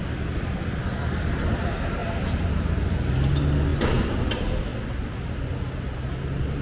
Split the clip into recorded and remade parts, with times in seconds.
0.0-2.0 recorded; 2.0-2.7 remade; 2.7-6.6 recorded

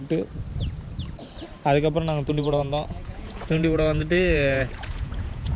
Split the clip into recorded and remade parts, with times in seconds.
0.0-2.3 recorded; 2.3-5.6 remade

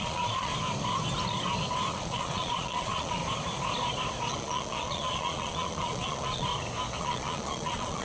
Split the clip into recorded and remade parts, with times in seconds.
0.0-0.5 remade; 0.5-1.9 recorded; 1.9-3.2 remade; 3.2-4.3 recorded; 4.3-6.5 remade; 6.5-7.0 recorded; 7.0-8.0 remade